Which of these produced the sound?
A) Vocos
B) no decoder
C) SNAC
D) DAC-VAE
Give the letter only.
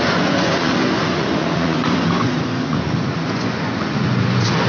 A